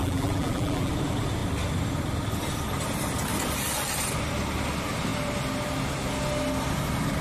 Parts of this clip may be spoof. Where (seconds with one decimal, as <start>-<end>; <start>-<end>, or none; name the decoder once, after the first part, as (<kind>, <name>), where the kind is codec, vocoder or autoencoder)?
0.0-0.9 (vocoder, BigVGAN v2)